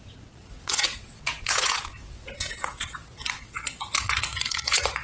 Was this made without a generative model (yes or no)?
no